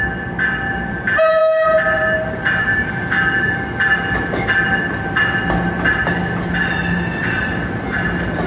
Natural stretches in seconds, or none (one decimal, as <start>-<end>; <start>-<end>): 0.0-8.5